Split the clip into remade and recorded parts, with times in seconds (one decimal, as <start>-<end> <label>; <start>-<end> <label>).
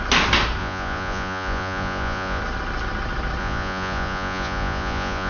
0.0-0.6 recorded; 0.6-2.4 remade; 2.4-3.4 recorded; 3.4-5.3 remade